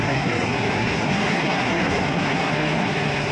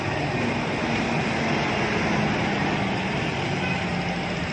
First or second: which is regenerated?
first